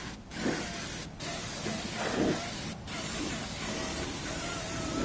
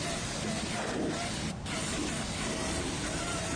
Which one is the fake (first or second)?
second